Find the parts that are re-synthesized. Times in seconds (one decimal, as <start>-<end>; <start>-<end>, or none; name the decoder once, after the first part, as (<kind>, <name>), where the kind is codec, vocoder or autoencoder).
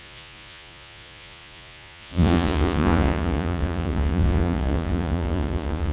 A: 0.0-5.9 (vocoder, Vocos)